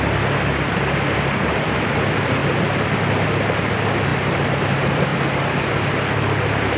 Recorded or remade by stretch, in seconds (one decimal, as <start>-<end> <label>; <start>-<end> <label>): 0.0-6.8 recorded